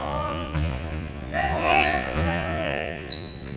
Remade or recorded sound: remade